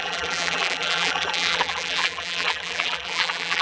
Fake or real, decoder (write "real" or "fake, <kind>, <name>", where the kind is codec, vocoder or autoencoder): fake, vocoder, BigVGAN v2